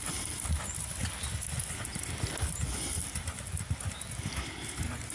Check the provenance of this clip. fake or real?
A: real